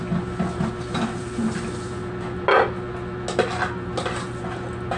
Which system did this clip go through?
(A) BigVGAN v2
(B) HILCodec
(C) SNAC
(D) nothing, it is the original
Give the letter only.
D